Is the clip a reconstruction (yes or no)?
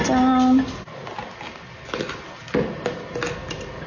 no